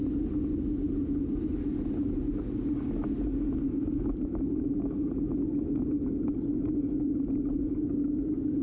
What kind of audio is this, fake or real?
real